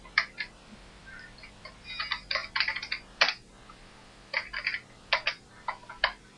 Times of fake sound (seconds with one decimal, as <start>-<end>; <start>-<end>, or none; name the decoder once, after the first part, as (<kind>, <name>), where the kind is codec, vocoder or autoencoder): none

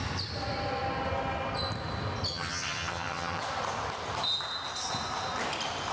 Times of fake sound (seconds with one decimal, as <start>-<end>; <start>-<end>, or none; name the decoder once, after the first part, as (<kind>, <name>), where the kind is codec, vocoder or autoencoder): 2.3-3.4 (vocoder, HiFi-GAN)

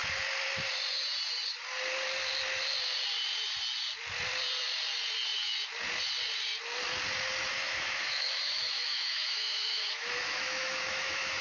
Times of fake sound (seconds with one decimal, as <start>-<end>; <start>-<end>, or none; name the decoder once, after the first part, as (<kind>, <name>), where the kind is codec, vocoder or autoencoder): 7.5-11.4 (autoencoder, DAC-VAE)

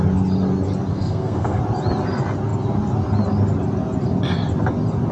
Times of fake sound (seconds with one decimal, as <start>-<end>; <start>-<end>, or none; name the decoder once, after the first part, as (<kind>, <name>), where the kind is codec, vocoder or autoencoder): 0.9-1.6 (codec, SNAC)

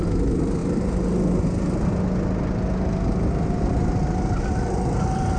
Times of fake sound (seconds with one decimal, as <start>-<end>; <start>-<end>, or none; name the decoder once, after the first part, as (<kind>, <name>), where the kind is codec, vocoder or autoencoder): none

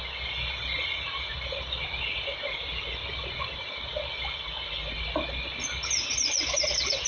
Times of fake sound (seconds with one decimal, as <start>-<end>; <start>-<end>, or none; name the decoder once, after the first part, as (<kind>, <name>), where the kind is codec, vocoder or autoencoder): none